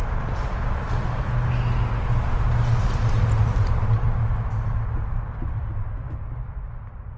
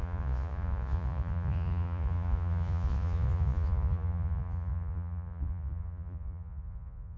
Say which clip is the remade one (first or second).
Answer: second